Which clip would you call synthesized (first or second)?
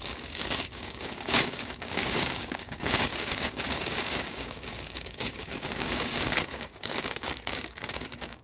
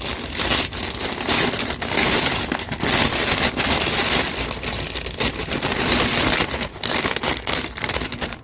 first